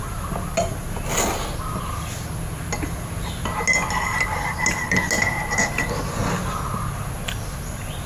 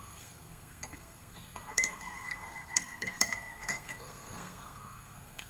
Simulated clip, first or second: second